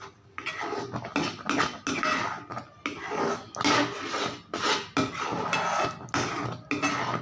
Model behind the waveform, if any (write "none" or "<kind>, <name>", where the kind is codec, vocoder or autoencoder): none